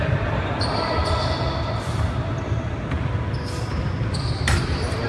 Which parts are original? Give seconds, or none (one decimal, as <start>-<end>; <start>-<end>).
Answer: 1.0-4.1